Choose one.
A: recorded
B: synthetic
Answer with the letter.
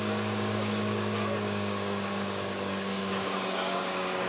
B